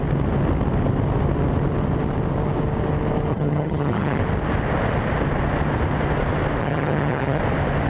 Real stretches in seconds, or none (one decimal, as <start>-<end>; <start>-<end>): 0.0-3.3; 4.2-6.6; 7.4-7.9